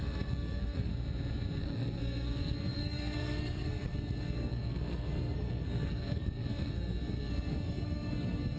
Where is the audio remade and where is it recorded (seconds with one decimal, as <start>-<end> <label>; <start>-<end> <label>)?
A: 0.0-0.9 remade; 0.9-1.6 recorded; 1.6-8.6 remade